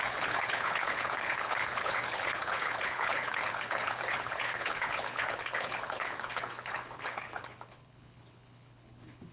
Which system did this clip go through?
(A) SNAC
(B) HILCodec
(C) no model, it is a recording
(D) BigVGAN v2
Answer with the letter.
B